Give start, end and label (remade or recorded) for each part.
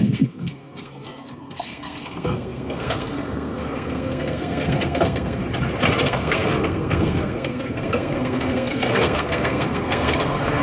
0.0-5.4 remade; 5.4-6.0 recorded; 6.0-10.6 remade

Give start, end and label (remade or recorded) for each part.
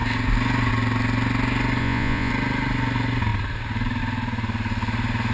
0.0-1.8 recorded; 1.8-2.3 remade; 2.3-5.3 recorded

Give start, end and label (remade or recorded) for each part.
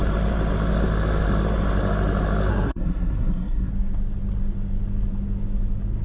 0.0-2.5 recorded; 2.5-3.7 remade; 3.7-6.0 recorded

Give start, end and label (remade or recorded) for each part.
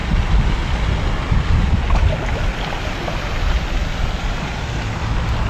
0.0-5.5 recorded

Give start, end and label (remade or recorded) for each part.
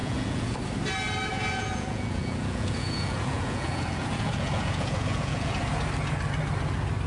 0.0-0.5 remade; 0.5-1.3 recorded; 1.3-5.6 remade; 5.6-7.1 recorded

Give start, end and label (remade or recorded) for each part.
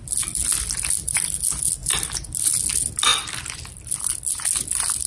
0.0-1.8 recorded; 1.8-2.5 remade; 2.5-5.1 recorded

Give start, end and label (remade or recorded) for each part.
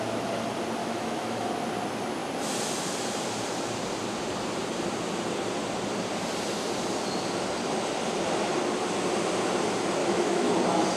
0.0-0.8 recorded; 0.8-1.5 remade; 1.5-10.0 recorded; 10.0-10.5 remade; 10.5-11.0 recorded